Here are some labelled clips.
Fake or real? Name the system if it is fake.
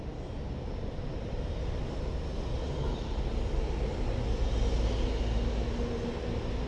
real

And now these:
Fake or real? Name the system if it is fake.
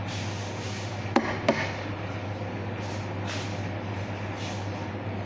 real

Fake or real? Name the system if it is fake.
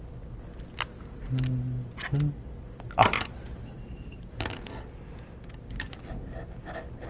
real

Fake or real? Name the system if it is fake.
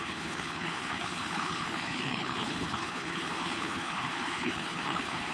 fake, codec, HILCodec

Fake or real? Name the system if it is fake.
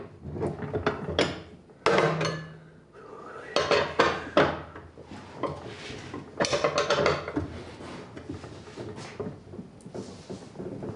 real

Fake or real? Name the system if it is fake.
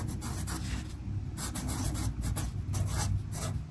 real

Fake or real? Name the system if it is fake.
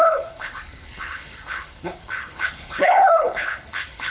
fake, codec, HILCodec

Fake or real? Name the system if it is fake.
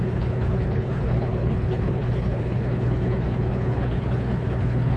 fake, codec, HILCodec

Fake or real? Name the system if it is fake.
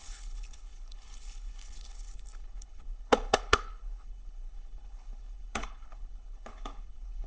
fake, codec, HILCodec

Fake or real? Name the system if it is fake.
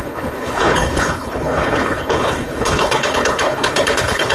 fake, codec, HILCodec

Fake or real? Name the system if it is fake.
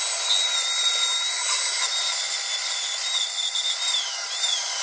real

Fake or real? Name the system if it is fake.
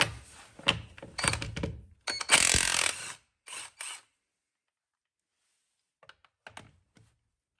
real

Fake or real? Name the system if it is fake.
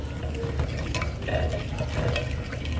real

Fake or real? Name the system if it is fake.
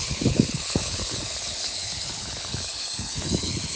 fake, codec, HILCodec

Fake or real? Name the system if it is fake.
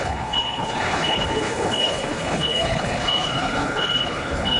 fake, codec, HILCodec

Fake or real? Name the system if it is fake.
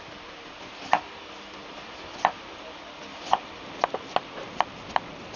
real